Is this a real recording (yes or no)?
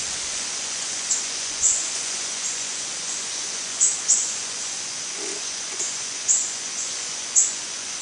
no